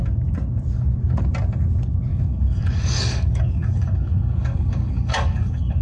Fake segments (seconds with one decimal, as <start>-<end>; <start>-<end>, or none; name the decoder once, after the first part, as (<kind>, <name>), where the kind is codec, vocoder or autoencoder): 2.1-5.8 (codec, DAC)